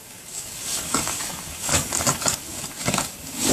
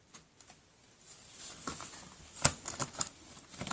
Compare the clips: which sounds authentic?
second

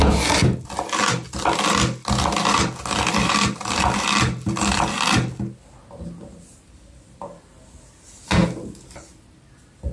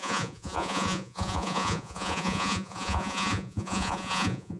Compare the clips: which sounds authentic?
first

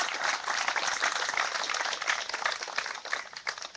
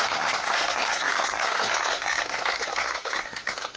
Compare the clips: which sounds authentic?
first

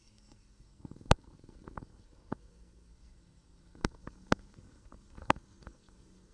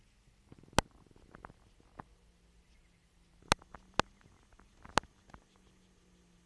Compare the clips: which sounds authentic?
second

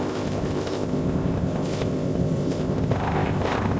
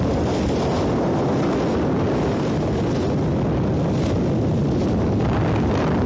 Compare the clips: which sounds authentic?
second